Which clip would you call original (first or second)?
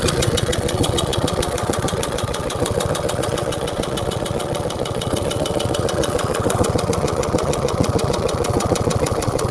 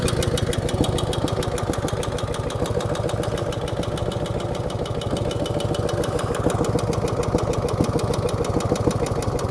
second